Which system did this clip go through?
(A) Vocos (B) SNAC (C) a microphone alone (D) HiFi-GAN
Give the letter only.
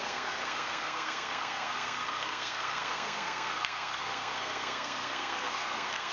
B